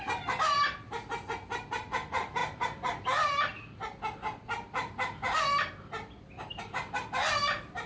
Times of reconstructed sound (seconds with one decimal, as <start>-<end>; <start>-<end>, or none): none